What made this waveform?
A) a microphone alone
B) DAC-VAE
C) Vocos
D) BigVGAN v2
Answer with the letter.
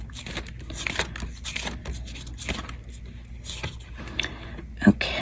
A